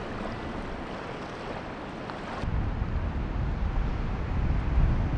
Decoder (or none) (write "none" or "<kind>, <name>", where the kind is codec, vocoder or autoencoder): none